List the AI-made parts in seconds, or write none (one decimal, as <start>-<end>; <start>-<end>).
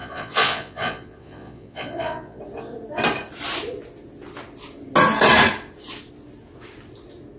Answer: 0.0-2.4